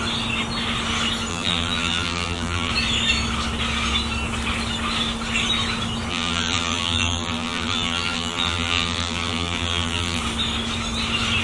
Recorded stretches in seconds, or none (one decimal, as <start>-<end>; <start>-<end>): 0.0-1.3; 2.7-6.1; 10.2-11.4